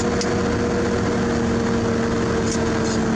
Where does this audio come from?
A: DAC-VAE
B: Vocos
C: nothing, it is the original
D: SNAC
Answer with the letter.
C